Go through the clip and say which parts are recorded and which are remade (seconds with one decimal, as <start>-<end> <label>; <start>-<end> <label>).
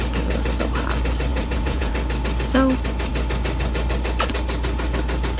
0.0-1.3 recorded; 1.3-1.9 remade; 1.9-5.4 recorded